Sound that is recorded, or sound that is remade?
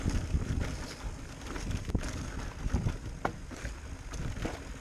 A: recorded